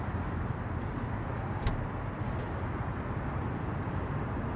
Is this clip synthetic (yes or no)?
no